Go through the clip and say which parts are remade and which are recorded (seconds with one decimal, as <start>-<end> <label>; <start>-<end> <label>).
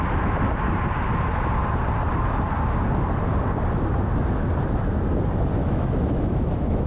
0.0-5.6 recorded; 5.6-6.9 remade